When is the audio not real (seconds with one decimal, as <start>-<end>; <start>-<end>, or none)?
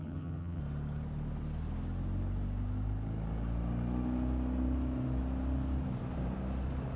0.0-0.6